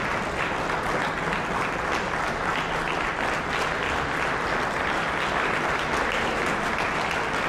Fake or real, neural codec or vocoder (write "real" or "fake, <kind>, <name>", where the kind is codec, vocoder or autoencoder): real